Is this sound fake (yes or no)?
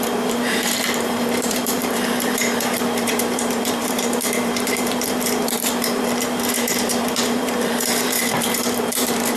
yes